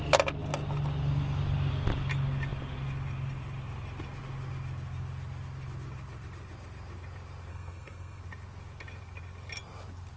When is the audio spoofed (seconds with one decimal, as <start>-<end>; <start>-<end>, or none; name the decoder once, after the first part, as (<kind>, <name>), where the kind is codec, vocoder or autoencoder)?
7.5-8.2 (codec, SNAC)